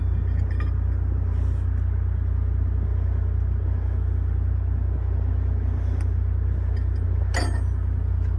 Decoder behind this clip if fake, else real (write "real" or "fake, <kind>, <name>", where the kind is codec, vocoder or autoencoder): real